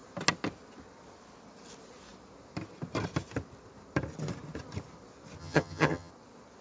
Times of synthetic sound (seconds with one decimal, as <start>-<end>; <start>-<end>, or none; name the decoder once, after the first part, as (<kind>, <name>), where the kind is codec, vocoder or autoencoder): 5.4-6.1 (vocoder, HiFi-GAN)